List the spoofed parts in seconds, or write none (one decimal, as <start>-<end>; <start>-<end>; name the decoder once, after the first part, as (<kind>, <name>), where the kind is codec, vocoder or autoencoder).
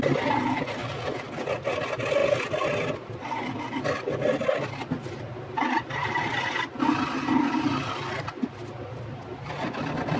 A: none